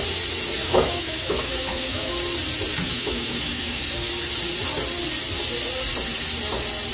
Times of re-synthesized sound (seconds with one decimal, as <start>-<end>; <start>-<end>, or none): 0.6-2.1; 2.9-3.8